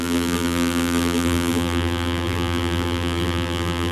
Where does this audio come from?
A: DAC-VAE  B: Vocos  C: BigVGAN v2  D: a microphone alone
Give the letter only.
C